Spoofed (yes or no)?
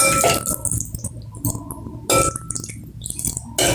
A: no